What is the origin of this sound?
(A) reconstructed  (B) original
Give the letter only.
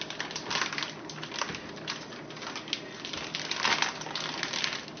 B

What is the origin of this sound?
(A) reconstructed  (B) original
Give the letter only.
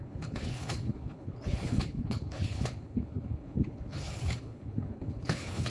A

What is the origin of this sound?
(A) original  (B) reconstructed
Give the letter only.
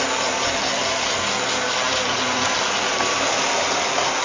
A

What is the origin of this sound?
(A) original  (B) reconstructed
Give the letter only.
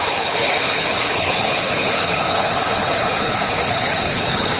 B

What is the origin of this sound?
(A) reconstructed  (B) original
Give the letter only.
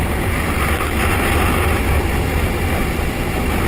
B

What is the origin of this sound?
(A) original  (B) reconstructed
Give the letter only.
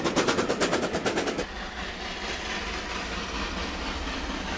A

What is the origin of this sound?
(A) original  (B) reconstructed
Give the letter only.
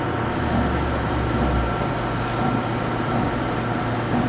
A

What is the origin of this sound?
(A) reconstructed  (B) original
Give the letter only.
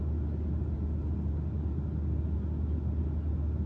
B